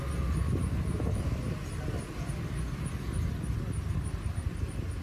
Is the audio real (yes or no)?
yes